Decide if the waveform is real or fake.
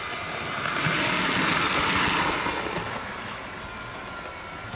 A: real